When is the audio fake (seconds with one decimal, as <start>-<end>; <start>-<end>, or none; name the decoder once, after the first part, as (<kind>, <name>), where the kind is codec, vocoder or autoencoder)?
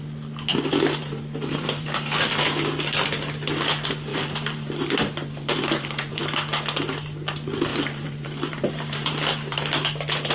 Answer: 0.5-2.3 (vocoder, BigVGAN v2); 4.1-6.2; 7.7-9.6